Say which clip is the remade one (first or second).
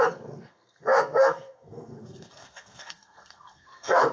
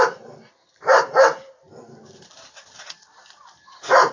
first